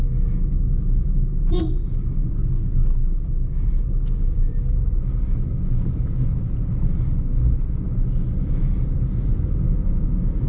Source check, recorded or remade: recorded